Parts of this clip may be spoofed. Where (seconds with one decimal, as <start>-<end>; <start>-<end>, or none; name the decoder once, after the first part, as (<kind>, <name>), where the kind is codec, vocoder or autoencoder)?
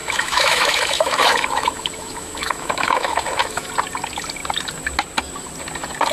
0.0-3.7 (autoencoder, DAC-VAE)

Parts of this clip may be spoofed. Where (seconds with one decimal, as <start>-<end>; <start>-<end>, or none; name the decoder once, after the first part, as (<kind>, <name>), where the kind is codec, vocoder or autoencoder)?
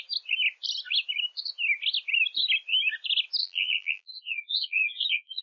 3.4-5.4 (vocoder, BigVGAN v2)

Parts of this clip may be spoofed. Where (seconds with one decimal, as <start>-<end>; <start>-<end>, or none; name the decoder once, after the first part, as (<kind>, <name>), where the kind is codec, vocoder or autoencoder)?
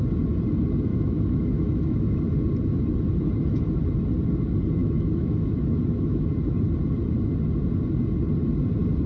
0.9-2.3 (autoencoder, DAC-VAE); 4.8-6.2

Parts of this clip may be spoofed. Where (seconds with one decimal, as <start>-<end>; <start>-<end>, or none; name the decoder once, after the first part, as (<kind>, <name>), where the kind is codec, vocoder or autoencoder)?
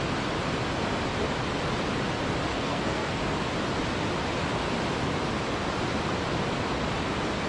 2.5-3.2 (codec, SNAC)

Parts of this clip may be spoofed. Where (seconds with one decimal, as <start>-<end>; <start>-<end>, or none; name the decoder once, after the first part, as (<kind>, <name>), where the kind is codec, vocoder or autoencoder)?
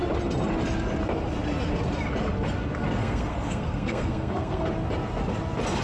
3.0-4.7 (codec, SNAC)